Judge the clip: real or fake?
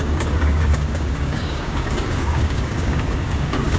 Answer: fake